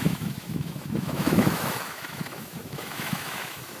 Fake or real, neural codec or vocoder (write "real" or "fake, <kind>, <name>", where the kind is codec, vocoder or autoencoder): fake, autoencoder, DAC-VAE